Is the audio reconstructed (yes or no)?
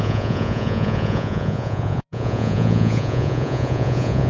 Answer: yes